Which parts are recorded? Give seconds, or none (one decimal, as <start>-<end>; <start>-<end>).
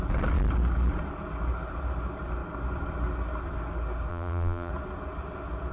0.0-4.1; 4.7-5.7